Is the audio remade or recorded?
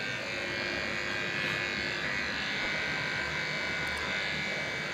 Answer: recorded